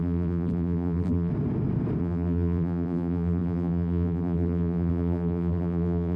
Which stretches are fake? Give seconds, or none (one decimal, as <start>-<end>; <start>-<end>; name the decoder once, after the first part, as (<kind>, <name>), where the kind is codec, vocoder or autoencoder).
0.0-1.3 (vocoder, BigVGAN v2); 2.0-6.2